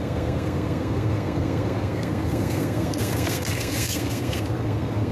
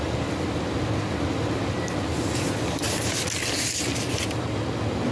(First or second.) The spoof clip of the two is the first